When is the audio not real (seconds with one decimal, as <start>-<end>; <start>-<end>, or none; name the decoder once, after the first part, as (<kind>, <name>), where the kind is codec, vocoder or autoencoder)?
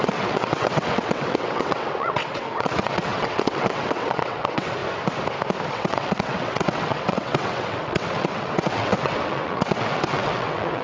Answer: 0.0-4.8 (vocoder, WaveNeXt); 5.7-10.8